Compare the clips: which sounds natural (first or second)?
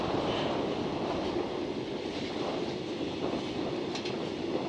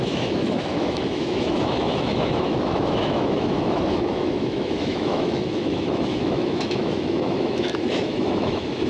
first